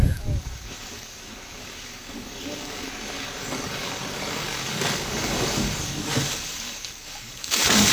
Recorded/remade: remade